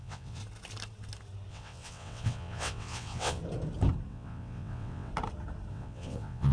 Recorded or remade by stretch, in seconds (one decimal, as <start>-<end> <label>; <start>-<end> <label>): 0.0-0.4 remade; 0.4-1.5 recorded; 1.5-3.4 remade; 3.4-4.1 recorded; 4.1-5.1 remade; 5.1-5.7 recorded; 5.7-6.5 remade